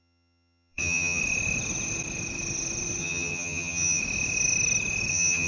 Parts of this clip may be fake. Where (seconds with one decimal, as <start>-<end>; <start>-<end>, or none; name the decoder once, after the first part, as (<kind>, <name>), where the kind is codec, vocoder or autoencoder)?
0.0-1.2 (vocoder, HiFi-GAN); 3.0-4.0; 5.1-5.5